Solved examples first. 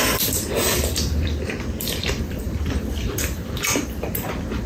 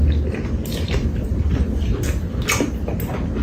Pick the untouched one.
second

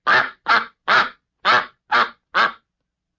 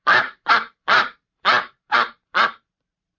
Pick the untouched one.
first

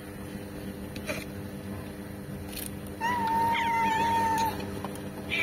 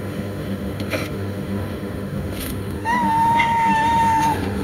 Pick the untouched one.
first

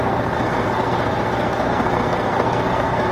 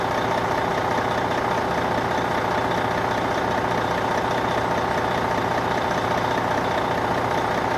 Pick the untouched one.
second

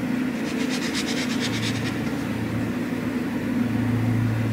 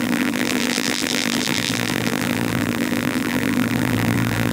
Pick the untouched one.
first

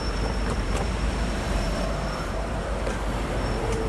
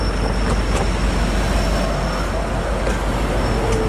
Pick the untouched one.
second